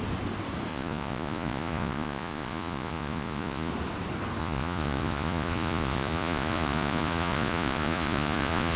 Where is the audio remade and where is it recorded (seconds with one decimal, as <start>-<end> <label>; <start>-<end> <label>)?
0.0-0.7 recorded; 0.7-3.7 remade; 3.7-4.4 recorded; 4.4-8.8 remade